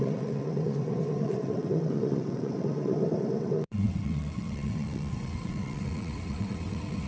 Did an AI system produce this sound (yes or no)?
yes